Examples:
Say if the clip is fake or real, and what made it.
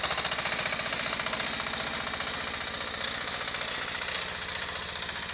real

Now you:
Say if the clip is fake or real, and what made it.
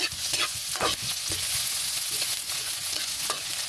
fake, vocoder, Vocos